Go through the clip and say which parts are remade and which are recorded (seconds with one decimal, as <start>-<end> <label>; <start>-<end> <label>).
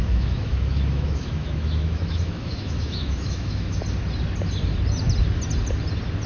0.0-3.8 remade; 3.8-6.3 recorded